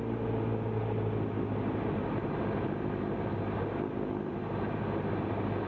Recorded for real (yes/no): yes